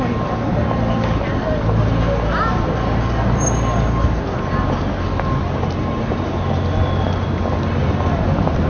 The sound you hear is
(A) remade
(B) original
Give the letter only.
B